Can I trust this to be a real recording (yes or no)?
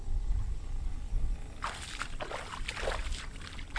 yes